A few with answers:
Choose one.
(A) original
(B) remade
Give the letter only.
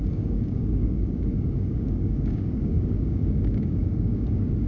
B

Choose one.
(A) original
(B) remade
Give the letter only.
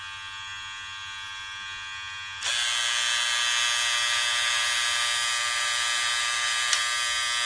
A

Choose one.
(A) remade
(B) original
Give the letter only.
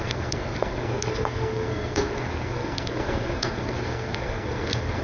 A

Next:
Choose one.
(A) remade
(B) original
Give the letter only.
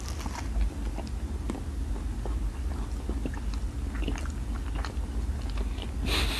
B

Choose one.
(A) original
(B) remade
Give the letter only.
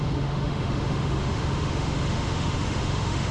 B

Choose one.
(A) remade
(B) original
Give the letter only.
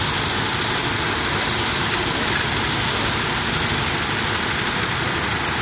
B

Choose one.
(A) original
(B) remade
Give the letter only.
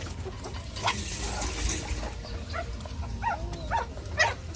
A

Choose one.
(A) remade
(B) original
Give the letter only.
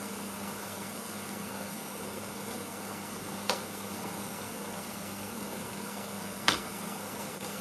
A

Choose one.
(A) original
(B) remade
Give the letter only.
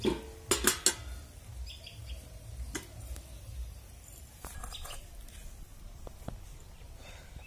A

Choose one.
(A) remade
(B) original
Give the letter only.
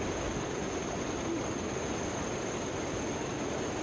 B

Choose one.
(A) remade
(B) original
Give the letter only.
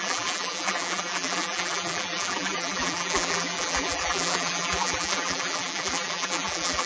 A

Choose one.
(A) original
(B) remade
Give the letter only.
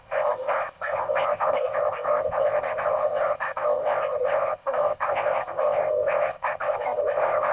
B